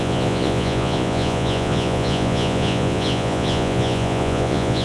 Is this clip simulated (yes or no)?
yes